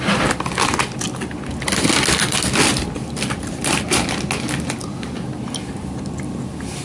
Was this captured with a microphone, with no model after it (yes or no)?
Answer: yes